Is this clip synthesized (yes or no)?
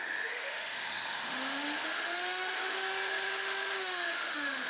yes